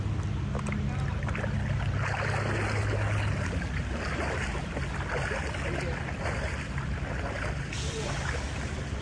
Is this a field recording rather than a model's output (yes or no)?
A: yes